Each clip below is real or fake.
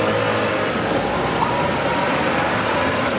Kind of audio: real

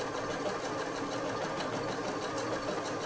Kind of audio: real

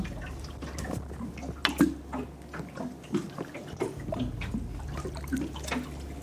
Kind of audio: real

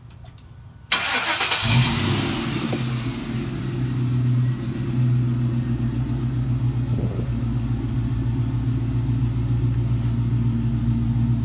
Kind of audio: real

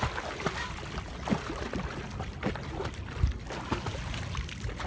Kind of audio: real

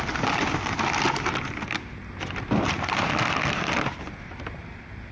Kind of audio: real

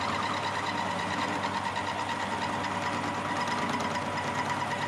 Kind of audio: real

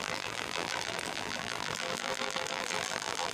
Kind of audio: fake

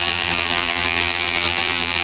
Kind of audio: fake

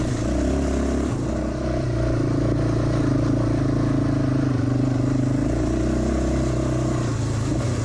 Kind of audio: real